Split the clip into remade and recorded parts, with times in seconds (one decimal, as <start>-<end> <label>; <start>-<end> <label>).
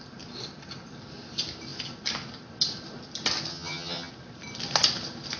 0.0-3.5 recorded; 3.5-4.1 remade; 4.1-5.4 recorded